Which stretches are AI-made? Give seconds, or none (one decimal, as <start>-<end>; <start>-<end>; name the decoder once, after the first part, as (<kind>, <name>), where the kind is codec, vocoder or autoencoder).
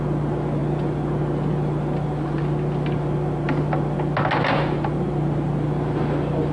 none